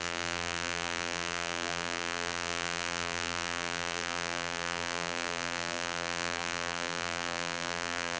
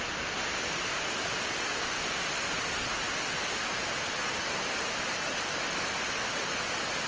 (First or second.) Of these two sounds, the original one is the second